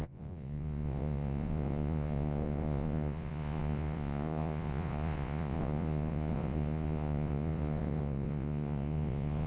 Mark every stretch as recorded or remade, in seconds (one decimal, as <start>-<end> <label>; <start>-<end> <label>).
0.0-9.5 remade